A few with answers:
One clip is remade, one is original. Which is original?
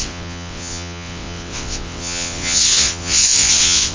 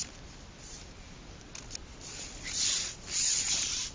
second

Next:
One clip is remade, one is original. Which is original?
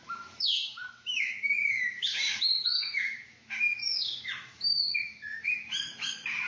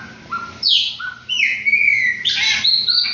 second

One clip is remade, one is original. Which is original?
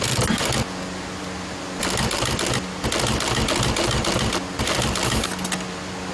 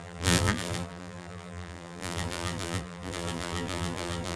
first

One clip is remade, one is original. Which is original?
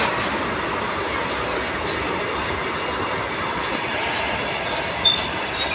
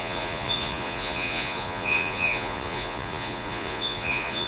first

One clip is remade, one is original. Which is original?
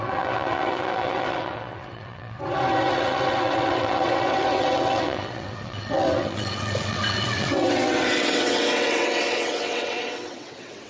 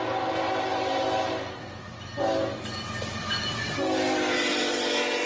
second